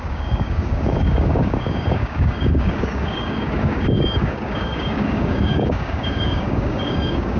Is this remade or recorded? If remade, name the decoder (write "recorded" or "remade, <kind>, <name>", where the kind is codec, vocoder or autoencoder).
remade, codec, DAC